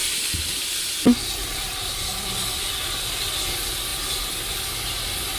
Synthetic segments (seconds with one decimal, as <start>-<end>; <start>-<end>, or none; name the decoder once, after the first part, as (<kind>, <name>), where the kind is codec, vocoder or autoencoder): 0.0-3.2 (vocoder, BigVGAN v2); 3.9-4.6